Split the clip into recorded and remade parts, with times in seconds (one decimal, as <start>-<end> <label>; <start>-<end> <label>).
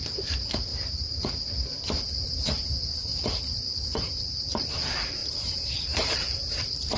0.0-0.7 remade; 0.7-2.1 recorded; 2.1-3.1 remade; 3.1-3.8 recorded; 3.8-7.0 remade